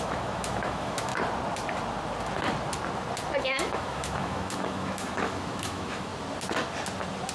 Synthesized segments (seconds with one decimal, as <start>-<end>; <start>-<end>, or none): 0.0-1.1; 3.4-6.1